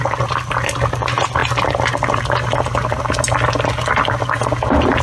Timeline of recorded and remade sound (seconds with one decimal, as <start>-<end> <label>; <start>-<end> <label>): 0.0-5.0 recorded